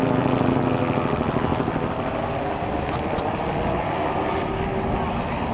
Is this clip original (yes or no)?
yes